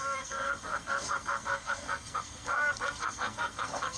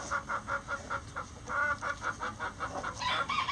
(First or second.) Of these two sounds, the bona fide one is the second